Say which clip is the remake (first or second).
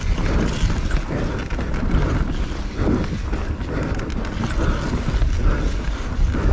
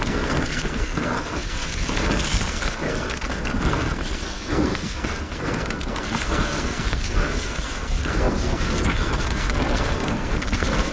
second